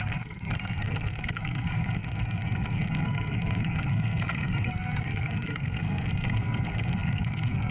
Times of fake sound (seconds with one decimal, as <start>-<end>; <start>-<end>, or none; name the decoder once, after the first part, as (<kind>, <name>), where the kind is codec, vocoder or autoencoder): 0.0-7.7 (codec, SNAC)